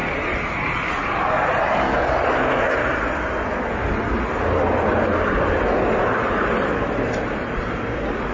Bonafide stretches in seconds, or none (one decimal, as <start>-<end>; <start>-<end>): 0.0-8.3